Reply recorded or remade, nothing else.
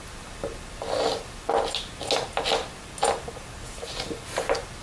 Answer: recorded